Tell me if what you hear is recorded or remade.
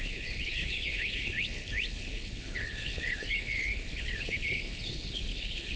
remade